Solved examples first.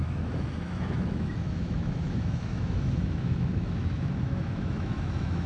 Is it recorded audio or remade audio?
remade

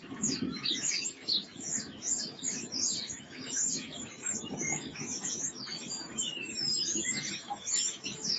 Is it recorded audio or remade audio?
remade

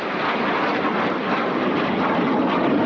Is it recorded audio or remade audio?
recorded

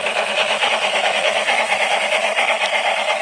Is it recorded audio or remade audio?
remade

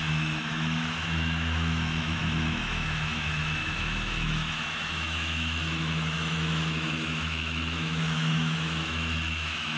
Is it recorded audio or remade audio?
remade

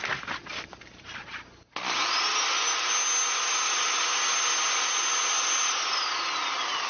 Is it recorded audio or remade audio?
recorded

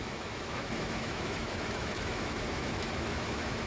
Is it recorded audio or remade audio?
remade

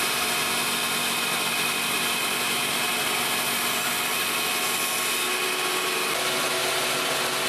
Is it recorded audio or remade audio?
recorded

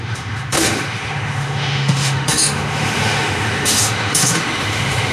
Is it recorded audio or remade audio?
remade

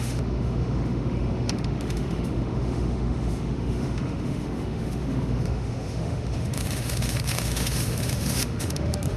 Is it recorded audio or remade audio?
remade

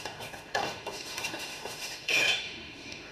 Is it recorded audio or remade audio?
remade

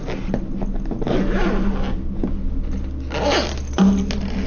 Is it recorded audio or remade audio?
recorded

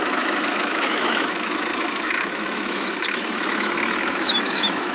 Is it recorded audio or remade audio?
remade